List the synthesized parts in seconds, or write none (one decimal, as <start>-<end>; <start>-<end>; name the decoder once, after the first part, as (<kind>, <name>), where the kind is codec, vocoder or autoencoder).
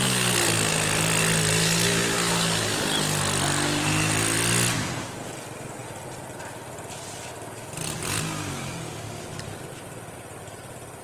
none